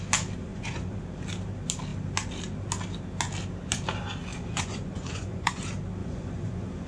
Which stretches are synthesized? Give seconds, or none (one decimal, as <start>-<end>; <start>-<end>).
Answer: 0.5-1.0; 4.3-5.6; 6.0-6.9